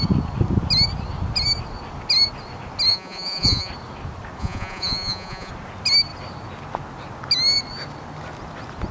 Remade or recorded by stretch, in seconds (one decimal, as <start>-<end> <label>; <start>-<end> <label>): 0.0-2.9 recorded; 2.9-3.7 remade; 3.7-4.4 recorded; 4.4-5.5 remade; 5.5-8.9 recorded